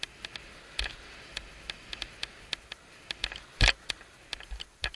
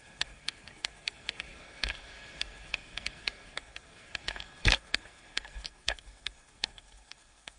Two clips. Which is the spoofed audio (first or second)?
second